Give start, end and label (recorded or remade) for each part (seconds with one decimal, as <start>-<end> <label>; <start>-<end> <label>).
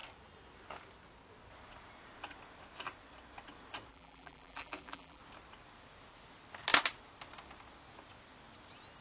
0.0-3.9 recorded; 3.9-5.2 remade; 5.2-9.0 recorded